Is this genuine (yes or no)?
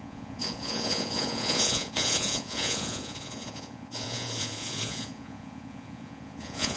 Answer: no